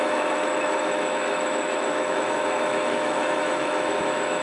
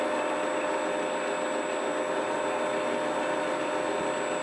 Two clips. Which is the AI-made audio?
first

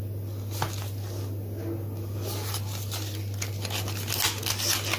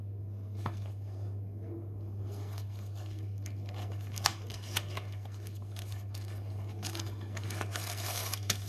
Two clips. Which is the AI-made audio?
second